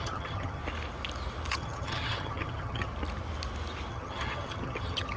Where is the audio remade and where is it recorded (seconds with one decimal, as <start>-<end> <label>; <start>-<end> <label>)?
0.0-0.6 remade; 0.6-1.5 recorded; 1.5-2.9 remade; 2.9-3.9 recorded; 3.9-5.2 remade